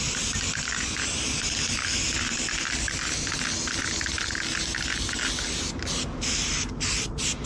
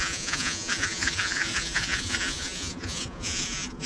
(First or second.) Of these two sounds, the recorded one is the first